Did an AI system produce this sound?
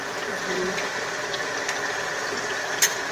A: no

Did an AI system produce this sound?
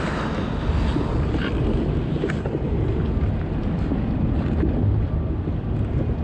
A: no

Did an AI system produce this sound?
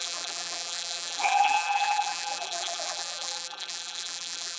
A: yes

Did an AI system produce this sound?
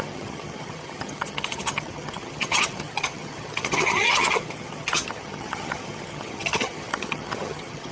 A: yes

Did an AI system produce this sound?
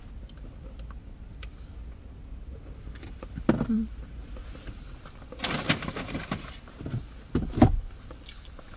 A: no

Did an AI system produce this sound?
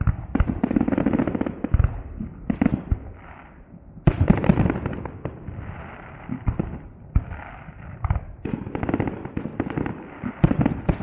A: yes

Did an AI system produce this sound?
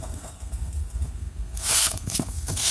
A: yes